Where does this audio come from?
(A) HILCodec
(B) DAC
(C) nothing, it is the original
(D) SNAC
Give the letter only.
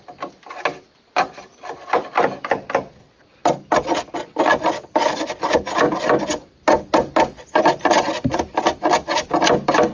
C